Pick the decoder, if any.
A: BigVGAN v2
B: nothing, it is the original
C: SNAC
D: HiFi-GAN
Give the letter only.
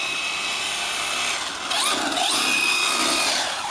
B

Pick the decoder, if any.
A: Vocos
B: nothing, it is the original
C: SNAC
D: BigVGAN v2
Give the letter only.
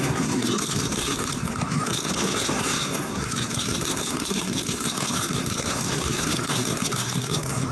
C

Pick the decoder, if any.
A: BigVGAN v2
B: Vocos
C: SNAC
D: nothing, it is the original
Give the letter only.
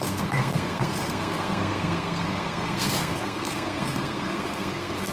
C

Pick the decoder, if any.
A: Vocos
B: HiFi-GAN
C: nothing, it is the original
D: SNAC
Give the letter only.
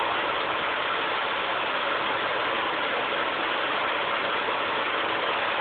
C